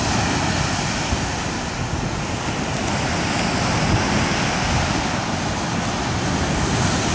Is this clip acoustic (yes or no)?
yes